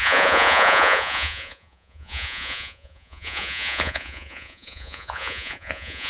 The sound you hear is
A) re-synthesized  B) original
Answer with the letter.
A